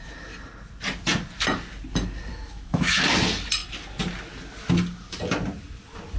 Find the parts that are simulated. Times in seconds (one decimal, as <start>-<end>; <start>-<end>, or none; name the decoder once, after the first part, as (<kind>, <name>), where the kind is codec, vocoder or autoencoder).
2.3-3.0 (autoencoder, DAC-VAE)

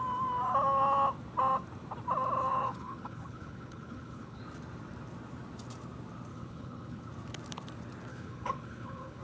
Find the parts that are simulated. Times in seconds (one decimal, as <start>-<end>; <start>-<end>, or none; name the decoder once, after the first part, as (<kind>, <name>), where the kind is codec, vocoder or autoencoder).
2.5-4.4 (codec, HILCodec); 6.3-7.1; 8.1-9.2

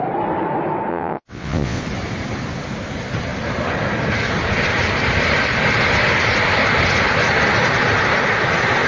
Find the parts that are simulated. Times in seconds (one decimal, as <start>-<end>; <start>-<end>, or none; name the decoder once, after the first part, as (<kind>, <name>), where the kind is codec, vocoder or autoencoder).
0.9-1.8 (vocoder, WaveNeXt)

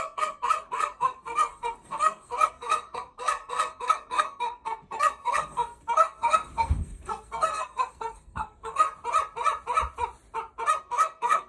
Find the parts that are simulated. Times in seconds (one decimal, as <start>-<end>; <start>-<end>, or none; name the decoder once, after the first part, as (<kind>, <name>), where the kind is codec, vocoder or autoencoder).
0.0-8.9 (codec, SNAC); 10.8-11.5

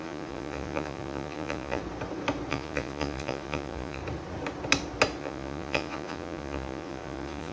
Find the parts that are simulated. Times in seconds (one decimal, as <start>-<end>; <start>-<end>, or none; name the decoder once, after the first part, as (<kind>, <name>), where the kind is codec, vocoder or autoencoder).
0.0-1.8 (vocoder, Vocos); 2.5-4.0; 5.2-7.5

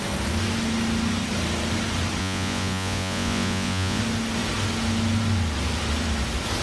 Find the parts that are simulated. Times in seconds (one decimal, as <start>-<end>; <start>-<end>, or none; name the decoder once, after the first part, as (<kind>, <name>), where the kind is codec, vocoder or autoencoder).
2.2-4.0 (vocoder, Vocos)

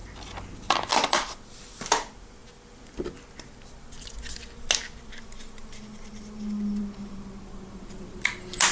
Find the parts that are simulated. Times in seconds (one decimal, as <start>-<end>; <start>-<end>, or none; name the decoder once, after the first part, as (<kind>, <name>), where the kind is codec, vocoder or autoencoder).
none

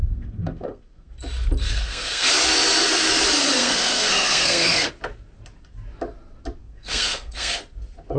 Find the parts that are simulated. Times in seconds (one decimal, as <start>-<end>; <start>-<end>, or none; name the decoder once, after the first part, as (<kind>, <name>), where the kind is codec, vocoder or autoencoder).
0.0-1.1 (codec, SNAC); 1.6-2.3; 3.6-4.9; 6.6-7.6